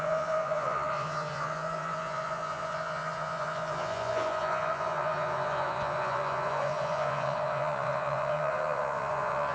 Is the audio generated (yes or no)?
yes